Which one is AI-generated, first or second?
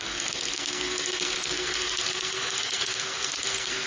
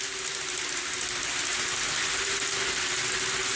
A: first